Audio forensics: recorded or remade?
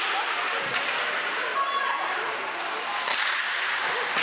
recorded